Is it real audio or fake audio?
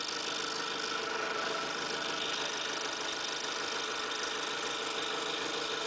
real